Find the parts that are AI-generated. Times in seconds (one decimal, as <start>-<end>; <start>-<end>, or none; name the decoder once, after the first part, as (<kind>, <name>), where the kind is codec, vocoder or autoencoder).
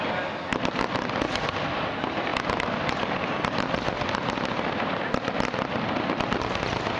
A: 2.3-3.6 (vocoder, BigVGAN v2)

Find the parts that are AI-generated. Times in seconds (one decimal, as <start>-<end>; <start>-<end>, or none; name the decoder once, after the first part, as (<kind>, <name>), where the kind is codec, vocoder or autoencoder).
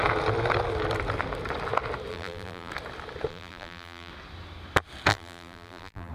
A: 2.1-2.7 (vocoder, BigVGAN v2); 3.3-4.1; 5.1-6.1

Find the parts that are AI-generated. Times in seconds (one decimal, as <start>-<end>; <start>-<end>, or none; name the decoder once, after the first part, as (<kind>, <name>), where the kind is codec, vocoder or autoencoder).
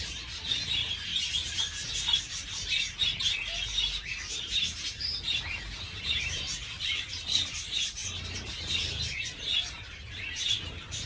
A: 0.0-1.1 (vocoder, BigVGAN v2); 3.0-11.1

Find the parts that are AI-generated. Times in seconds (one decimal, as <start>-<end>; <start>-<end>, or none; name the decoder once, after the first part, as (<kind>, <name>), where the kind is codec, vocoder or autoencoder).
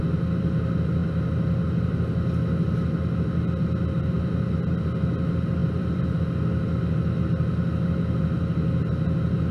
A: 5.6-6.2 (vocoder, BigVGAN v2)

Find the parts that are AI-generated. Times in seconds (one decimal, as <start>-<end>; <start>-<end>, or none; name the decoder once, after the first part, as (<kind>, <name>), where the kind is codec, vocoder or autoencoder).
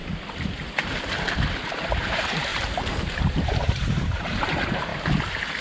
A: 1.7-4.9 (vocoder, BigVGAN v2)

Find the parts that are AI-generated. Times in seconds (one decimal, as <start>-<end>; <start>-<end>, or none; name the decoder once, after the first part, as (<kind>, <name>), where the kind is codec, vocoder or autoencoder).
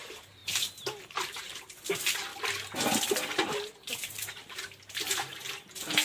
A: 0.0-0.4 (vocoder, BigVGAN v2); 1.0-2.3; 3.9-6.0